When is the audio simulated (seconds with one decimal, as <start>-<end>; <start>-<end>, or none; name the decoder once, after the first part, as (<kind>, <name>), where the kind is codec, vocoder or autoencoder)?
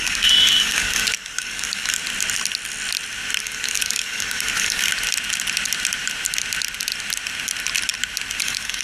0.0-2.0 (codec, DAC); 3.4-4.9; 8.4-8.8